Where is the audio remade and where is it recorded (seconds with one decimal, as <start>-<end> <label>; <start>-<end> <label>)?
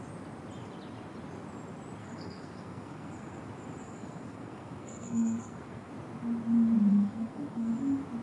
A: 0.0-2.0 recorded; 2.0-3.4 remade; 3.4-3.8 recorded; 3.8-5.9 remade; 5.9-6.9 recorded; 6.9-7.7 remade; 7.7-8.2 recorded